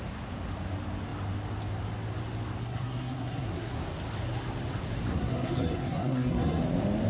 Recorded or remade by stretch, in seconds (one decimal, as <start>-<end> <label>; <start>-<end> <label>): 0.0-2.6 recorded; 2.6-3.8 remade; 3.8-5.1 recorded; 5.1-6.6 remade; 6.6-7.1 recorded